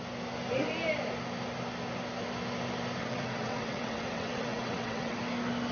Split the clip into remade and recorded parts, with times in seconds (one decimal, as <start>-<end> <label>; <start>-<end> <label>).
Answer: 0.0-3.0 recorded; 3.0-5.2 remade; 5.2-5.7 recorded